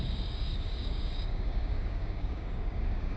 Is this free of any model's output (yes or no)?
no